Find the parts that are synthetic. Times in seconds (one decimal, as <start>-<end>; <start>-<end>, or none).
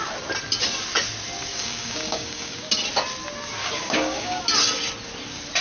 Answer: 1.5-2.7; 3.6-4.4